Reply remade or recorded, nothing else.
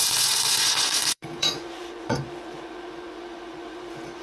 remade